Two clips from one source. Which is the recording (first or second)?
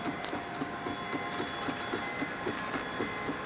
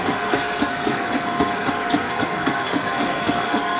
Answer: first